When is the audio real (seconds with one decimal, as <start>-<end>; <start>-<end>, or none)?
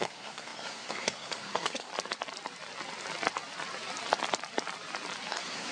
1.9-5.3